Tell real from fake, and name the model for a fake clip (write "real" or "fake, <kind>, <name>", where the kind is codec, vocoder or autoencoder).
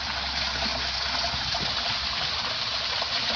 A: real